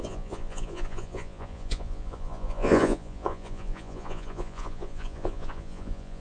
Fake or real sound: fake